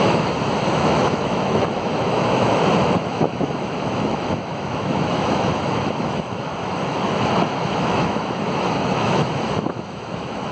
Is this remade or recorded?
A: remade